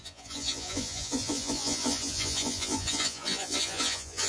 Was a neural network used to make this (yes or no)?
yes